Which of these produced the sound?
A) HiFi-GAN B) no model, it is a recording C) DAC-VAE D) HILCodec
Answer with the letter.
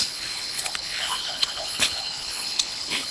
D